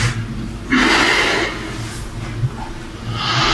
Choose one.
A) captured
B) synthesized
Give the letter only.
A